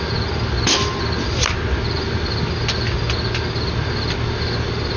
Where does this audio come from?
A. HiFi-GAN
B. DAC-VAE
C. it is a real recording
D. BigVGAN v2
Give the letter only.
C